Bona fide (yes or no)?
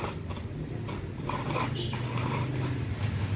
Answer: yes